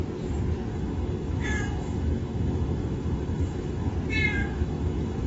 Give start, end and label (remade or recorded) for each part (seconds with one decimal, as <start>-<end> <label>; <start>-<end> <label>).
0.0-0.7 recorded; 0.7-3.9 remade; 3.9-4.4 recorded; 4.4-5.3 remade

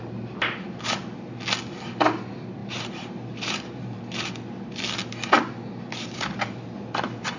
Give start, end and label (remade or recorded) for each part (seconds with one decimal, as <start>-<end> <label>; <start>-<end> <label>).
0.0-2.6 recorded; 2.6-4.0 remade; 4.0-7.4 recorded

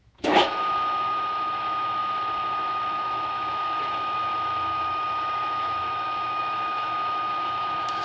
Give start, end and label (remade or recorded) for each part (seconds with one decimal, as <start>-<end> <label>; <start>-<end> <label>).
0.0-8.0 remade

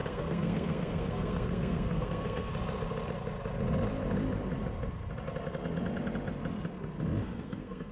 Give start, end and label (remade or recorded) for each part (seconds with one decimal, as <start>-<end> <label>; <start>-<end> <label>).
0.0-2.5 remade; 2.5-7.2 recorded; 7.2-7.9 remade